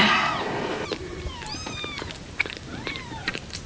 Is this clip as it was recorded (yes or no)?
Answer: no